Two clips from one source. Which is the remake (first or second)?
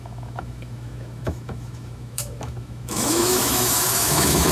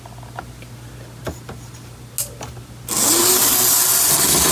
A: first